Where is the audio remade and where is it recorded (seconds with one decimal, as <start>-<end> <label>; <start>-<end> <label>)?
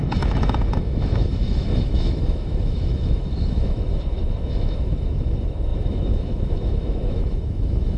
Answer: 0.0-8.0 remade